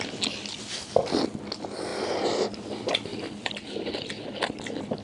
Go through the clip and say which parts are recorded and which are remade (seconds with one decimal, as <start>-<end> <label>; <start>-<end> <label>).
0.0-5.0 recorded